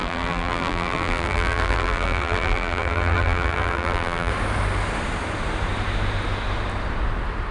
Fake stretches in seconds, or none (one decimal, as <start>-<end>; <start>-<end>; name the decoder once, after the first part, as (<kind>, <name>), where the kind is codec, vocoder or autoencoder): 0.0-4.3 (vocoder, BigVGAN v2)